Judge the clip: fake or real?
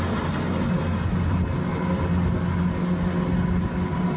real